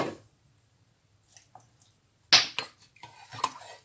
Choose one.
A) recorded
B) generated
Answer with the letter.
A